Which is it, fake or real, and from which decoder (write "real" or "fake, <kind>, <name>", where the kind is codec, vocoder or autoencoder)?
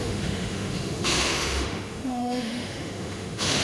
fake, autoencoder, DAC-VAE